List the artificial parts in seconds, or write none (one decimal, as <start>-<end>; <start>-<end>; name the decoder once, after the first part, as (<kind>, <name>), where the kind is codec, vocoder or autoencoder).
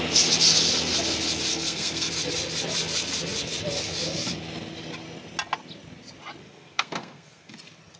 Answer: 1.5-2.1 (codec, SNAC); 6.4-7.5